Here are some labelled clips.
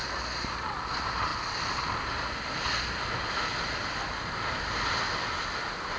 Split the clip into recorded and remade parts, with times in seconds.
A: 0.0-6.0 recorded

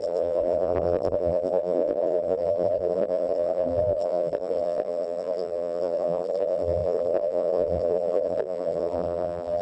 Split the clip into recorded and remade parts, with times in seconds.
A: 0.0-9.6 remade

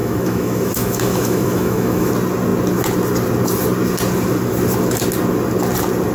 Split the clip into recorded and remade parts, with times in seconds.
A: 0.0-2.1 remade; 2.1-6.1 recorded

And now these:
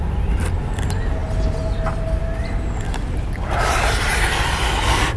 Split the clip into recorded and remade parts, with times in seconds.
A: 0.0-5.2 recorded

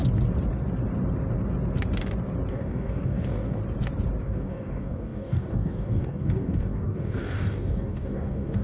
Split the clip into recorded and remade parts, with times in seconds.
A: 0.0-2.5 recorded; 2.5-3.6 remade; 3.6-4.2 recorded; 4.2-8.6 remade